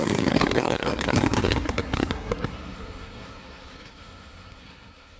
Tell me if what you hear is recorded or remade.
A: remade